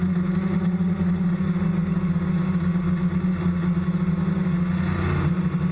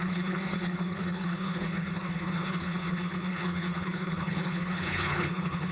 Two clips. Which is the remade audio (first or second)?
second